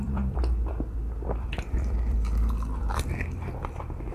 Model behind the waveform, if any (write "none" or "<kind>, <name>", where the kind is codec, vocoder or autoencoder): vocoder, BigVGAN v2